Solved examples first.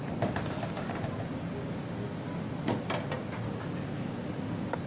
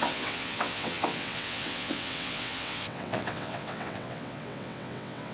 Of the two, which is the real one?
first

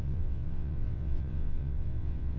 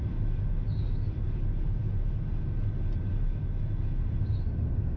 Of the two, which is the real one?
second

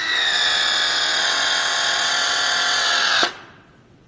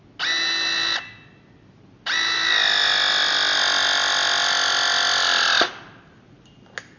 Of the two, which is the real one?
second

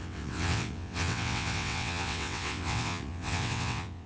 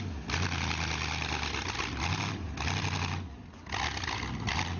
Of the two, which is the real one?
second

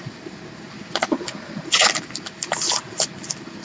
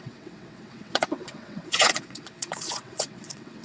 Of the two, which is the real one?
first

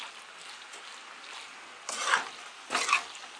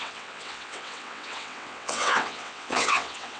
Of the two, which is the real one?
first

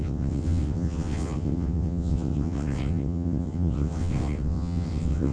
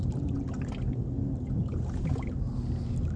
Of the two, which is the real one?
second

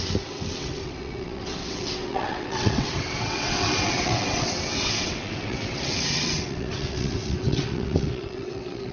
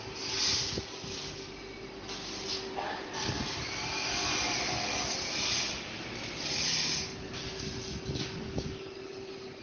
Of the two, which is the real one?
second